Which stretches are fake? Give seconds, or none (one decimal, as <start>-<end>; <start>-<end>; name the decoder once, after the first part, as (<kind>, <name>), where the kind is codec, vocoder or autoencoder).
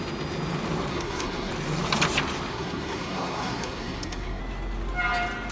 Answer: 0.9-1.5 (codec, SNAC); 2.5-4.4